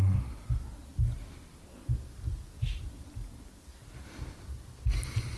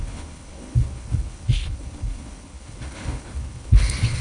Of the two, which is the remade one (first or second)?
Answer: second